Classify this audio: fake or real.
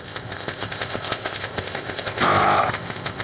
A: fake